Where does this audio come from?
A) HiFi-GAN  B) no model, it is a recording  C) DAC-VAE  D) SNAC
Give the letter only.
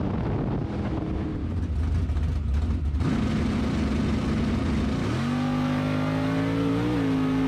B